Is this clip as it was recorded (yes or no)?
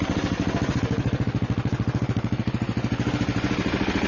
yes